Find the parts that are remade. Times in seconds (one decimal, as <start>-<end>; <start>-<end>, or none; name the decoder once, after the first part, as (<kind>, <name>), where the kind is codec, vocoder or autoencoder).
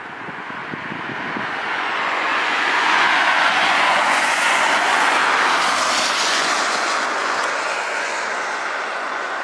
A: 0.0-0.6 (vocoder, Vocos); 1.4-5.2; 6.1-9.4